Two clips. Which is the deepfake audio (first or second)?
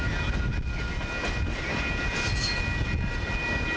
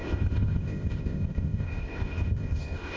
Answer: second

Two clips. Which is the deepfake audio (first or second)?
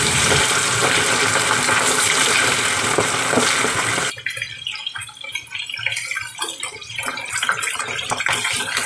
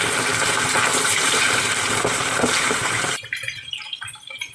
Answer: second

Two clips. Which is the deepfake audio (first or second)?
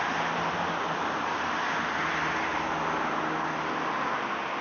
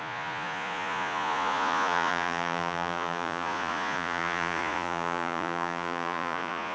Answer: second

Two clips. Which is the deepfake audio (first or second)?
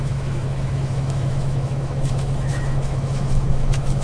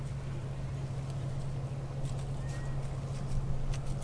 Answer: first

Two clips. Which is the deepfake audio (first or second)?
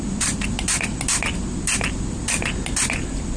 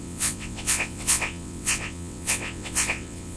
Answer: second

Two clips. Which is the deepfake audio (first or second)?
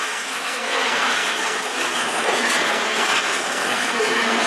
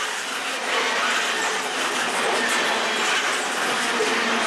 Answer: first